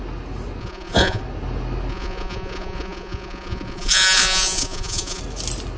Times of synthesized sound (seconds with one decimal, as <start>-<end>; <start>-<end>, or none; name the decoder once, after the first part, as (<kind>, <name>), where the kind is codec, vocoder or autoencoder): 0.6-1.2 (vocoder, Vocos); 1.9-5.2